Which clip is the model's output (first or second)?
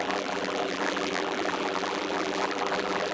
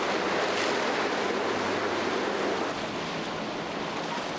first